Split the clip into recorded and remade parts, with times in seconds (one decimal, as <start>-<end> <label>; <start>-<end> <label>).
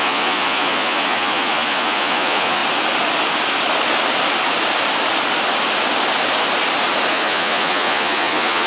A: 0.0-2.6 remade; 2.6-7.1 recorded; 7.1-8.7 remade